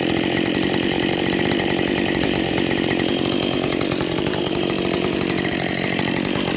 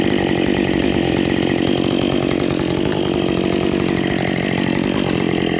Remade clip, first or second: first